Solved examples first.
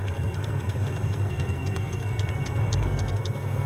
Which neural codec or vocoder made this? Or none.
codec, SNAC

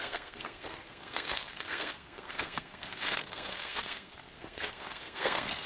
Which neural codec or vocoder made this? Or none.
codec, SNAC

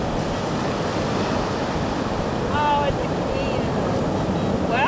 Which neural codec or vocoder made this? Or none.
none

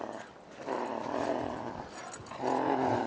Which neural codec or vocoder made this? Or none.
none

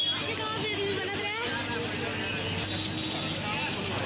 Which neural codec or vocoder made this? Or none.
none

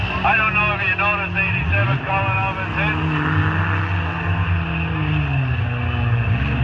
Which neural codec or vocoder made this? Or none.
none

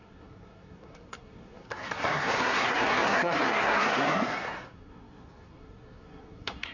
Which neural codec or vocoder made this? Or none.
codec, SNAC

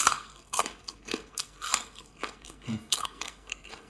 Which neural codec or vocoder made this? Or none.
codec, SNAC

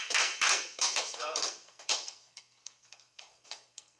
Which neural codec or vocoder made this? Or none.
codec, SNAC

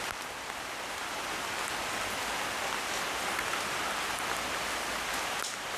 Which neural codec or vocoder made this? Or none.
none